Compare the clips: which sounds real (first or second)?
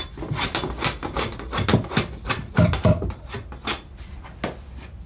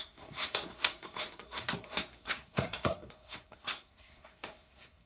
first